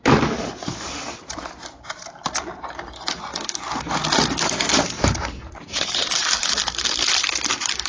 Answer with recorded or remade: remade